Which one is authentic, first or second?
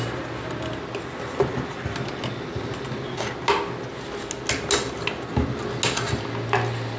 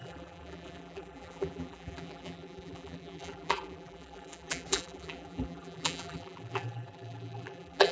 first